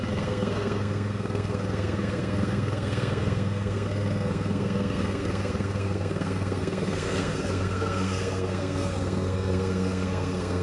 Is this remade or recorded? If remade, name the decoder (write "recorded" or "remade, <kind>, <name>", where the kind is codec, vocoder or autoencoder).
remade, codec, SNAC